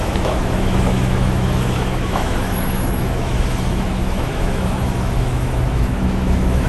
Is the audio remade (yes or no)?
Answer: yes